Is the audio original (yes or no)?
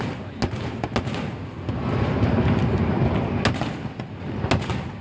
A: yes